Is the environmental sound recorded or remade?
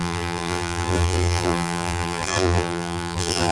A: remade